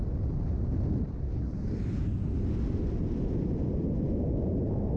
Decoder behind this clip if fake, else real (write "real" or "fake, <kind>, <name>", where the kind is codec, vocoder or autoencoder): real